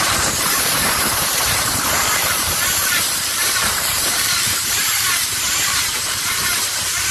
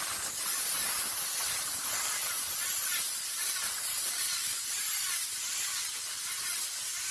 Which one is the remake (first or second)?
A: first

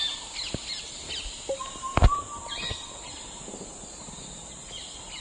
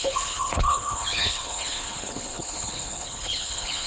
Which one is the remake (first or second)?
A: second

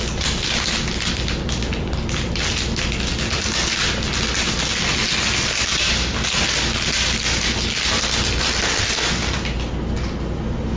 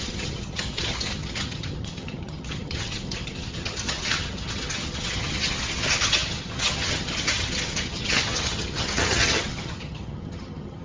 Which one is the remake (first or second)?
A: second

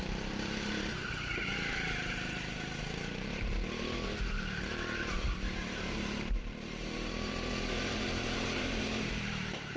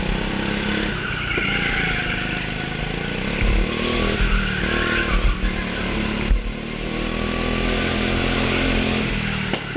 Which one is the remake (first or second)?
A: first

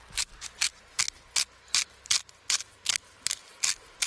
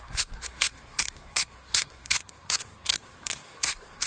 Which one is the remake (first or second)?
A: second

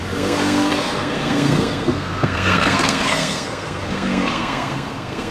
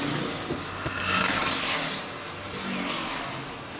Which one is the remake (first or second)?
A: first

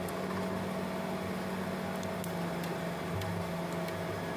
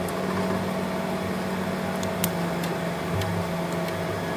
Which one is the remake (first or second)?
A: first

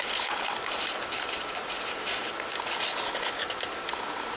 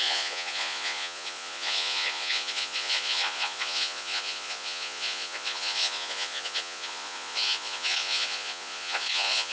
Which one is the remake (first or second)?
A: second